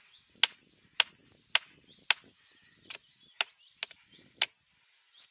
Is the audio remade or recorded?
recorded